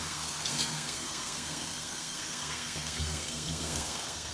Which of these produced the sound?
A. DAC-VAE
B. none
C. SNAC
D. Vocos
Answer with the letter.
C